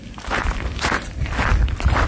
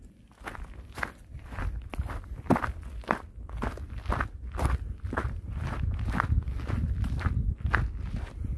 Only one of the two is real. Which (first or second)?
second